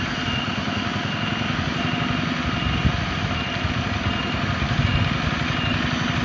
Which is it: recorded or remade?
recorded